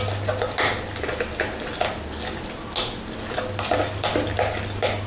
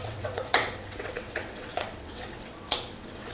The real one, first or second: first